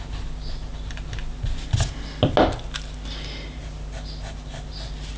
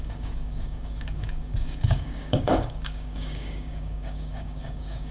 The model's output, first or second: second